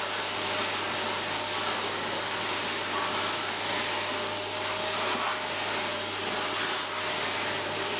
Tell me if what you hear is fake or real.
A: real